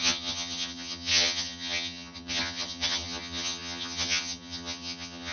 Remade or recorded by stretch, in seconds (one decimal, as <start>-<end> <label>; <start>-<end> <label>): 0.0-5.3 remade